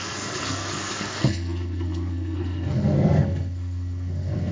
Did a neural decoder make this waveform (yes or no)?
yes